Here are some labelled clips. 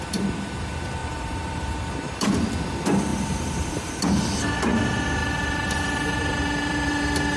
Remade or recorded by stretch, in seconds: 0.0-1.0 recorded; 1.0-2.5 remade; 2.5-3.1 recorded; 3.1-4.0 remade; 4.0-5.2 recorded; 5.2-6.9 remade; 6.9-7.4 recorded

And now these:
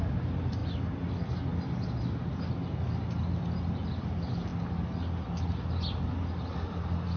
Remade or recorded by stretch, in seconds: 0.0-7.2 recorded

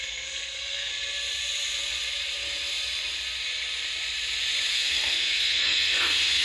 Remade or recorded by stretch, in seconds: 0.0-0.9 remade; 0.9-4.7 recorded; 4.7-6.4 remade

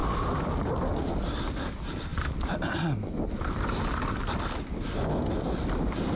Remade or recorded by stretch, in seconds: 0.0-6.2 recorded